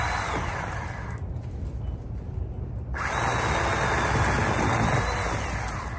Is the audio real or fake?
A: real